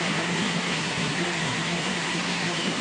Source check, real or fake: fake